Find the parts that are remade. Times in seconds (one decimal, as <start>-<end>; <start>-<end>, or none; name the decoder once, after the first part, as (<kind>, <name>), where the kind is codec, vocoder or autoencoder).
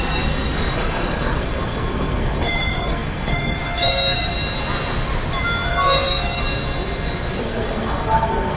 0.0-4.3 (codec, SNAC); 5.7-6.4; 7.4-8.6